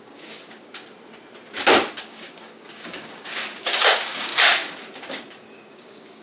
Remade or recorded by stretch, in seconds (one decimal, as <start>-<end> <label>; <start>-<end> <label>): 0.0-0.7 remade; 0.7-1.9 recorded; 1.9-4.3 remade; 4.3-5.1 recorded; 5.1-6.2 remade